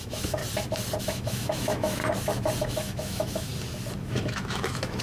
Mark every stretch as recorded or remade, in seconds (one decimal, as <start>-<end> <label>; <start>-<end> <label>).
0.0-0.4 remade; 0.4-1.0 recorded; 1.0-2.0 remade; 2.0-2.6 recorded; 2.6-3.5 remade; 3.5-4.0 recorded; 4.0-5.0 remade